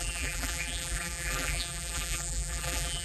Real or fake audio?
fake